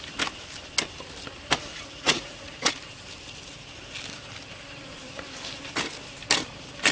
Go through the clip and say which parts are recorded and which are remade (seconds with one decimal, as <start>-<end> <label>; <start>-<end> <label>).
0.0-1.7 recorded; 1.7-2.7 remade; 2.7-6.9 recorded